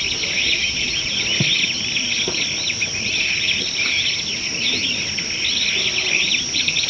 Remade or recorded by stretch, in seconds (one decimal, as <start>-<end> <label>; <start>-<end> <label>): 0.0-6.9 recorded